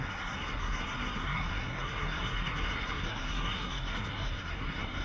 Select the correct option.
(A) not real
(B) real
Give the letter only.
A